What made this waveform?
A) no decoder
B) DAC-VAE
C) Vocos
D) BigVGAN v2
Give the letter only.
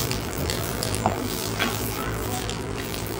D